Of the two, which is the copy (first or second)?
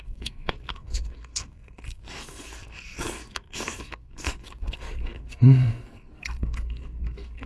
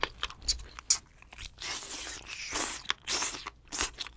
first